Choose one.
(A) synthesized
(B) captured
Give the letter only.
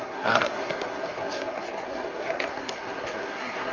A